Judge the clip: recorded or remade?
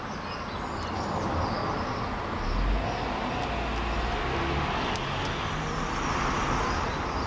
recorded